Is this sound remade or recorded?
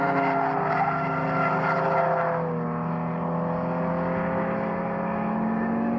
recorded